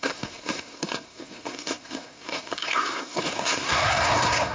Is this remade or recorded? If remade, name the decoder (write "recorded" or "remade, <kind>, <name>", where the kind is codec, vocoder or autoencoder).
remade, codec, SNAC